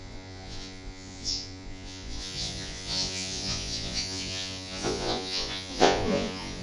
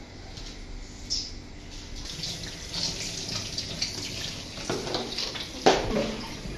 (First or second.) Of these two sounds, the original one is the second